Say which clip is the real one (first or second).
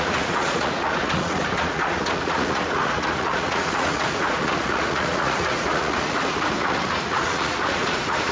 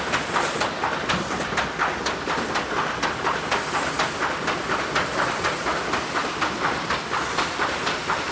second